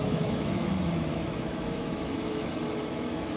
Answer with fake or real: fake